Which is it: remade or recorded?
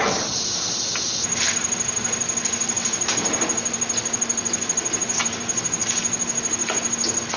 recorded